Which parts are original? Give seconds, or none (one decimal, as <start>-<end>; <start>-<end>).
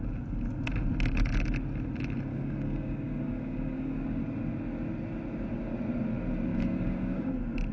0.0-2.3; 4.2-6.5; 7.3-7.7